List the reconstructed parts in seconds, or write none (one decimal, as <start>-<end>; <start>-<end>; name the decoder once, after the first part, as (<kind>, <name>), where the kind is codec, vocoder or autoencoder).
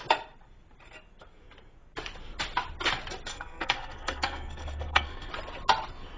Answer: 3.3-5.3 (codec, SNAC)